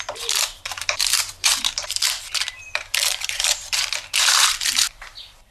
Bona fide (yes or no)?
no